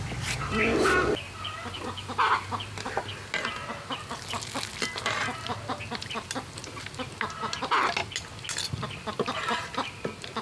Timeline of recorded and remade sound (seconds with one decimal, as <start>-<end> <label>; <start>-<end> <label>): 0.0-10.4 recorded